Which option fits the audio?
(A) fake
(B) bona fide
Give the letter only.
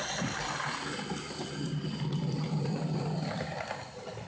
B